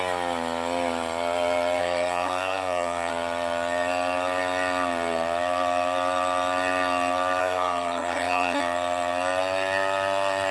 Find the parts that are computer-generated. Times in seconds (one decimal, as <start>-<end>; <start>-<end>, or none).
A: 1.8-3.1; 7.4-8.6